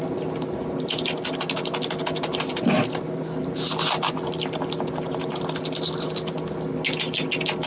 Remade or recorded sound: recorded